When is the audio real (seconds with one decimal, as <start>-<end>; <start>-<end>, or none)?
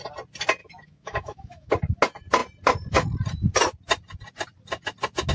0.0-0.6; 1.7-5.3